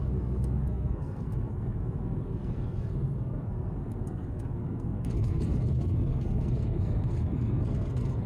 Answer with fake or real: fake